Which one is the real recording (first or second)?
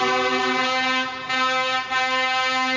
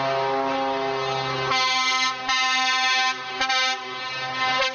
second